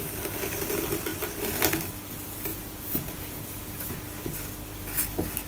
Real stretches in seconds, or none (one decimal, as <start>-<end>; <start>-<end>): 0.0-2.5; 3.8-5.5